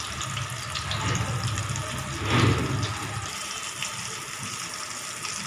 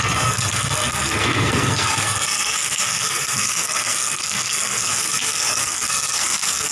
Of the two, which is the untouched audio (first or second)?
first